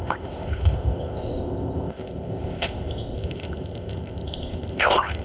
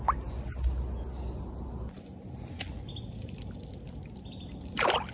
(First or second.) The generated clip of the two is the first